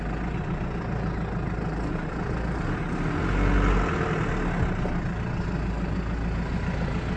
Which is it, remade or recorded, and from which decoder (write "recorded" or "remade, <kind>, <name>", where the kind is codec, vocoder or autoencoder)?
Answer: recorded